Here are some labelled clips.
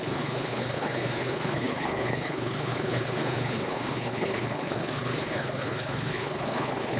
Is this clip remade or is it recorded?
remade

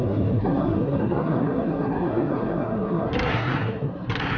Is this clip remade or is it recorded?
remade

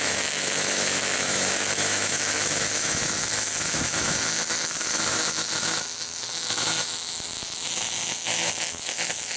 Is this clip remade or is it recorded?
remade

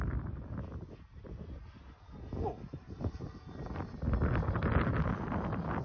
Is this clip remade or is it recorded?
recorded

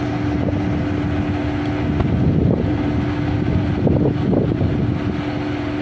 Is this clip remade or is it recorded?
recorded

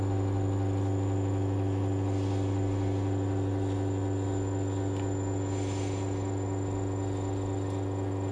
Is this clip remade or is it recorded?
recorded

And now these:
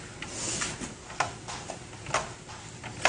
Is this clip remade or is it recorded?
recorded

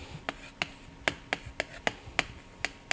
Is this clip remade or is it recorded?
recorded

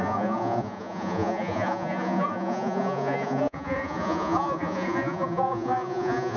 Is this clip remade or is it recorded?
remade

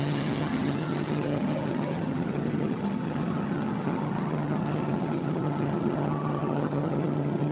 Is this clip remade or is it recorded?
remade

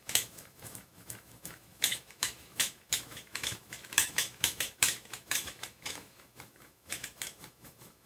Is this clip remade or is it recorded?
remade